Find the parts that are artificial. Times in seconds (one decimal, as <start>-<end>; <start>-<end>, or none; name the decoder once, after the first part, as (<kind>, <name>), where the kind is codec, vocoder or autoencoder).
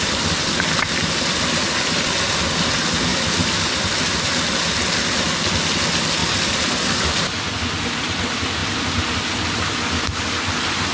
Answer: none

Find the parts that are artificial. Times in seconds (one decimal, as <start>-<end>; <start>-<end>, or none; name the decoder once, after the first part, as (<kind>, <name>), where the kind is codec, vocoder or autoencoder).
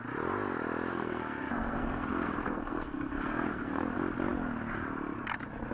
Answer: 0.9-3.8 (codec, SNAC)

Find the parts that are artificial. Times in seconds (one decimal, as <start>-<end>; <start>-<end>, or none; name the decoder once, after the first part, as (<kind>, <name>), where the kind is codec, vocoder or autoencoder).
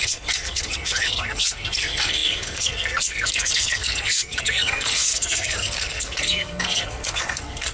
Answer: 0.0-7.7 (codec, SNAC)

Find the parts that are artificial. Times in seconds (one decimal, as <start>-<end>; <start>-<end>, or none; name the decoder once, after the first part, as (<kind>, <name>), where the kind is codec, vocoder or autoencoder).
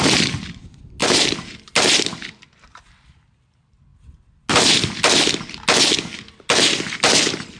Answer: none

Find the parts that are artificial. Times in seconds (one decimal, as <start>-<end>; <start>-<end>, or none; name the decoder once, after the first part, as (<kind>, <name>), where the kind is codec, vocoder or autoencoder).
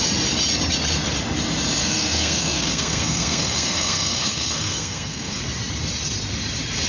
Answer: 1.8-5.4 (codec, SNAC)